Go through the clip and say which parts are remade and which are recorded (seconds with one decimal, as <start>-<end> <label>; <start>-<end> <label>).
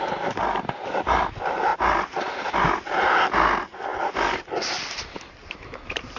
0.0-6.2 recorded